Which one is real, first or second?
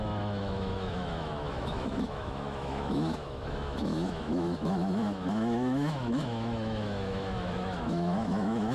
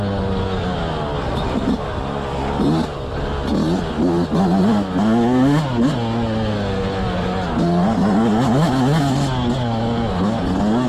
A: second